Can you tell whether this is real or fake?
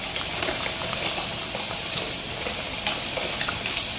real